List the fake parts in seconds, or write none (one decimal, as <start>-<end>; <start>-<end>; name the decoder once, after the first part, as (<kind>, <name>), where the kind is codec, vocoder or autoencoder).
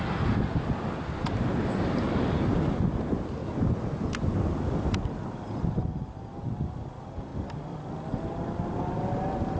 none